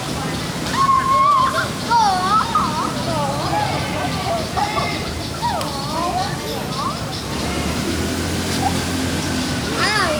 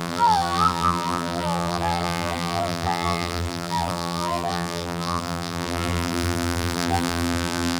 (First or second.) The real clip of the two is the first